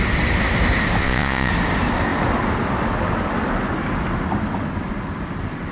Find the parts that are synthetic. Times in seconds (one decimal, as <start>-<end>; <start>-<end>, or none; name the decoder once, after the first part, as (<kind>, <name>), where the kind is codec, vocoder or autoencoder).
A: 1.0-1.5 (vocoder, Vocos)